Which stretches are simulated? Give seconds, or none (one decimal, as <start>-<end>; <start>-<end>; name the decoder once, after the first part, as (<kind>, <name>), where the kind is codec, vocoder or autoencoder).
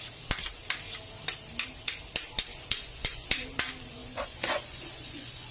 2.5-3.3 (vocoder, Vocos); 4.0-5.5